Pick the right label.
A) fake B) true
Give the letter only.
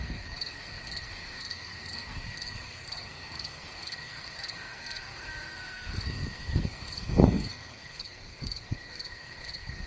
A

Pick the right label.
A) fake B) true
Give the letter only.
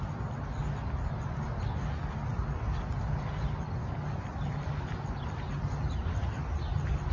B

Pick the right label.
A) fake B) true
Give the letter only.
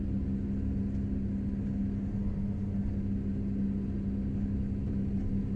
B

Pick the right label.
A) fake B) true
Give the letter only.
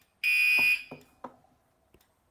B